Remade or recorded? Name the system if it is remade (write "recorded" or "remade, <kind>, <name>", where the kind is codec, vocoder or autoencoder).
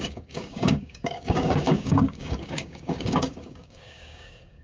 remade, codec, DAC